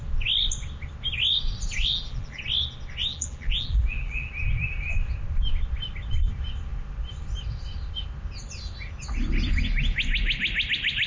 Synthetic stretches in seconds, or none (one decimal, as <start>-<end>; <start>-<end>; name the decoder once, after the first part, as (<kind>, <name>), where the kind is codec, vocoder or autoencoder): 1.8-2.4 (vocoder, BigVGAN v2); 3.1-4.3